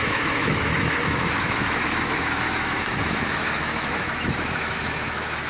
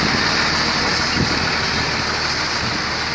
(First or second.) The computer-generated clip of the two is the first